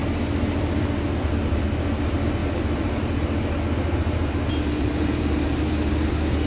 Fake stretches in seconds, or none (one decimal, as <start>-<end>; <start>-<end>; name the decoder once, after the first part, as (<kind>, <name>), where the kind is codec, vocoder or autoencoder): 2.4-3.0 (vocoder, BigVGAN v2); 4.0-5.5